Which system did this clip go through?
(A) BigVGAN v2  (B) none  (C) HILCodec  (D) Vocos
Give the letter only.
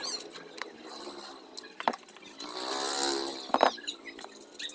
B